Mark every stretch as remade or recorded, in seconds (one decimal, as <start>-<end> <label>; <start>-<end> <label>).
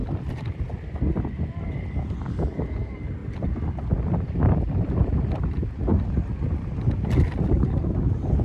0.0-2.3 remade; 2.3-3.2 recorded; 3.2-5.4 remade; 5.4-8.4 recorded